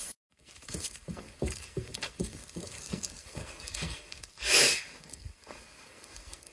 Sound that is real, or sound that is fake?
fake